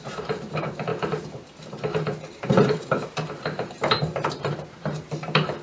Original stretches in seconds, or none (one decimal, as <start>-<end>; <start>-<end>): none